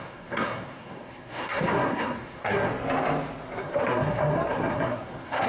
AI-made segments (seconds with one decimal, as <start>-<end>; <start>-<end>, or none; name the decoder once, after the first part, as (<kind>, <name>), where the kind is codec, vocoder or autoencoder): 0.0-2.7 (codec, SNAC); 3.6-5.5